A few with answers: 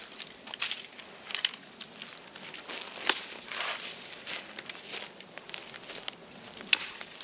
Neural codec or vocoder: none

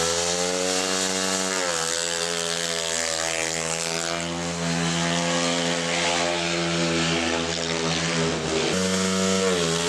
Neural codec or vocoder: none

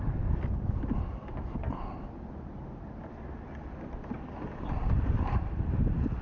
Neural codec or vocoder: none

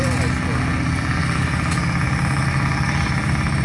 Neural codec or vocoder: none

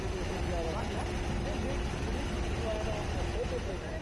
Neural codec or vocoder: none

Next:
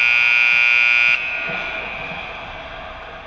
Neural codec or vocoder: none